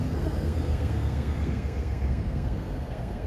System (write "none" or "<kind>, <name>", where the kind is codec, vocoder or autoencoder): codec, SNAC